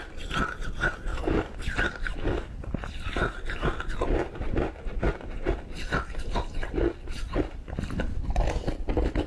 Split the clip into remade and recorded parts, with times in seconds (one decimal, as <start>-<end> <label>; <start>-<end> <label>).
0.0-1.1 recorded; 1.1-1.6 remade; 1.6-9.3 recorded